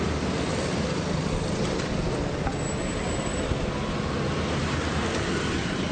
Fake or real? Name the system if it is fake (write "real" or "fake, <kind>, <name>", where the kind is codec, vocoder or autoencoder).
real